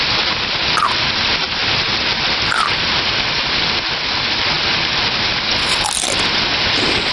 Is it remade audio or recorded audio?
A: recorded